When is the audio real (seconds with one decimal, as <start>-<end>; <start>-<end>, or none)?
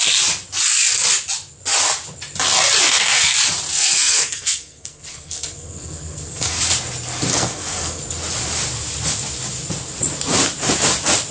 0.0-2.8; 3.3-3.7; 6.6-7.3; 8.0-11.3